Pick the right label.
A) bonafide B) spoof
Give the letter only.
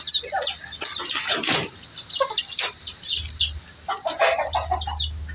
A